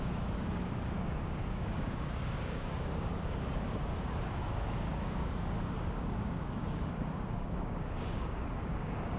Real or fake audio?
fake